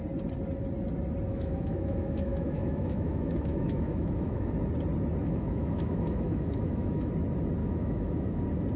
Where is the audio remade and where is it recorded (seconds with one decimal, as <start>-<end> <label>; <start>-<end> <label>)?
0.0-1.3 recorded; 1.3-4.5 remade; 4.5-5.2 recorded; 5.2-7.1 remade; 7.1-7.6 recorded; 7.6-8.4 remade; 8.4-8.8 recorded